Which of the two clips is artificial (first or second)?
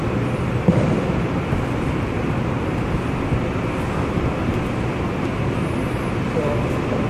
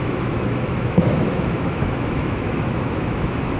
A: second